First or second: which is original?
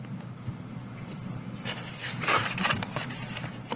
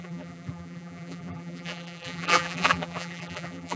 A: first